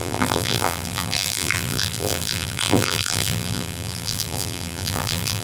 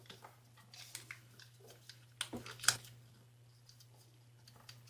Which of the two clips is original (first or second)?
second